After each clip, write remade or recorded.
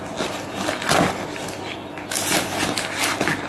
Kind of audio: recorded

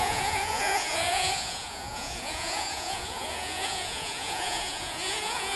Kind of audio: remade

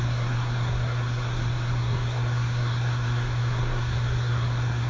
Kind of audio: remade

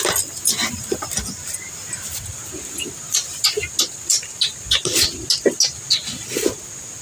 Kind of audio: recorded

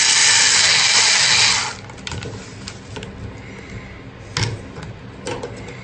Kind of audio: recorded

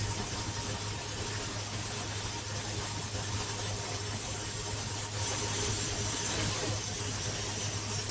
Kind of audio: recorded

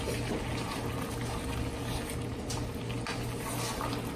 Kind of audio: recorded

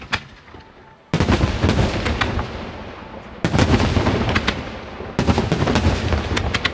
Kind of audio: recorded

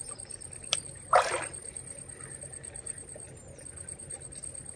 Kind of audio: recorded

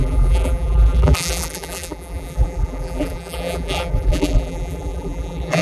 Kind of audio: remade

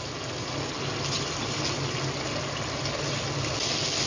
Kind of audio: recorded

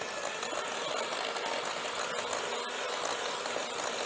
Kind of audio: recorded